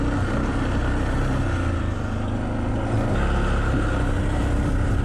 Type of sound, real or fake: real